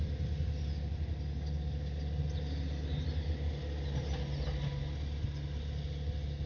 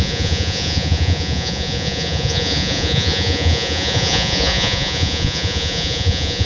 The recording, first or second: first